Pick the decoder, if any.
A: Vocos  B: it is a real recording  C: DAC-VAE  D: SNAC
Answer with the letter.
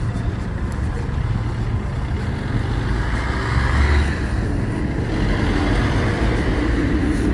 B